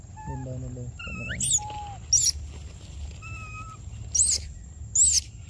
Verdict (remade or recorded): recorded